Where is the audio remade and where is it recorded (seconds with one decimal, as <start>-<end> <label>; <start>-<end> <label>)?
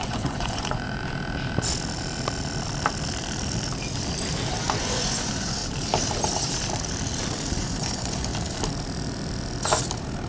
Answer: 0.0-1.0 remade; 1.0-4.6 recorded; 4.6-5.6 remade; 5.6-7.6 recorded; 7.6-8.3 remade; 8.3-10.3 recorded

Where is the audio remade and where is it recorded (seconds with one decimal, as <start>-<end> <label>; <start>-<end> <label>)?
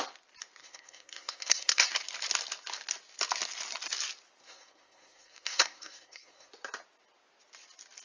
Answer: 0.0-0.6 recorded; 0.6-1.9 remade; 1.9-4.4 recorded; 4.4-6.5 remade; 6.5-8.0 recorded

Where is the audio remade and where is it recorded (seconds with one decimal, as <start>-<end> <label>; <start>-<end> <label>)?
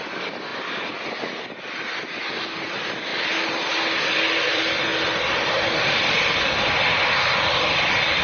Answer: 0.0-0.5 remade; 0.5-2.7 recorded; 2.7-8.2 remade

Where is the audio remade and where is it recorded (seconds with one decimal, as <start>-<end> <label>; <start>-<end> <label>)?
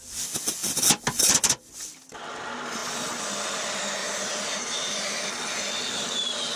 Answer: 0.0-4.0 recorded; 4.0-5.2 remade; 5.2-6.6 recorded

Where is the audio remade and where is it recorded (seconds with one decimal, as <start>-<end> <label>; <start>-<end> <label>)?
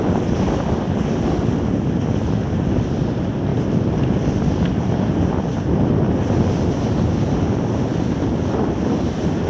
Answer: 0.0-9.5 recorded